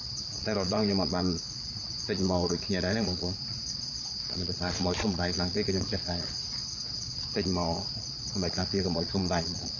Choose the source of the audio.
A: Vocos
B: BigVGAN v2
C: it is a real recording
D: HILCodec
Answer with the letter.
A